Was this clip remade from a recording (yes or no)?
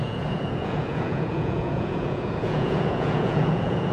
yes